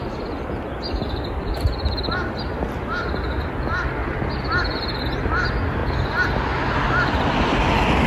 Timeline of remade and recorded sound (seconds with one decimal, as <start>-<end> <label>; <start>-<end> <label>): 0.0-8.1 recorded